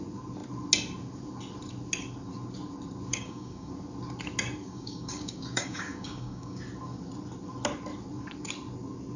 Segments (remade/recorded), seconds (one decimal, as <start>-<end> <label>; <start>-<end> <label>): 0.0-3.1 recorded; 3.1-3.7 remade; 3.7-4.6 recorded; 4.6-6.6 remade; 6.6-9.2 recorded